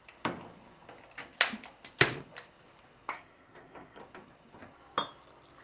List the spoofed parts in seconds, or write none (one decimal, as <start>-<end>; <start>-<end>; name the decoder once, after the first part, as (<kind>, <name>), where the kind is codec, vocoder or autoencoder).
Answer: 3.1-4.0 (codec, SNAC)